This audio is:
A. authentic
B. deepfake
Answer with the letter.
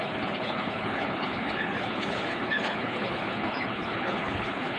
B